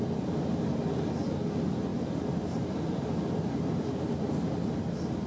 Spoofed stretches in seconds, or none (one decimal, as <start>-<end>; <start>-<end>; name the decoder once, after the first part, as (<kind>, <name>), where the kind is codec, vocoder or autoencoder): 1.9-5.3 (vocoder, BigVGAN v2)